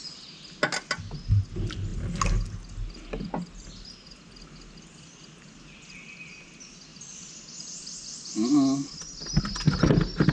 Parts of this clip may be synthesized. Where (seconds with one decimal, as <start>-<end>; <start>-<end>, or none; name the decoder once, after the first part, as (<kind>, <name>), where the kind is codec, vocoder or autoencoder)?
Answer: none